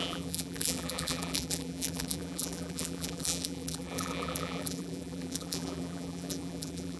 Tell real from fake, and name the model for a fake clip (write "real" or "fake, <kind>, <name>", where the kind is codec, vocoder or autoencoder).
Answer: fake, vocoder, BigVGAN v2